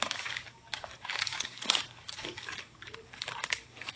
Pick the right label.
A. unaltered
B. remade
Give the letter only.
B